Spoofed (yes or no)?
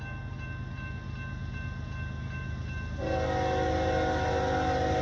no